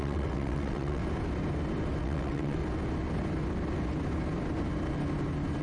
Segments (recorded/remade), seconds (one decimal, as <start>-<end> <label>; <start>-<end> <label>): 0.0-1.0 remade; 1.0-2.0 recorded; 2.0-2.6 remade; 2.6-5.6 recorded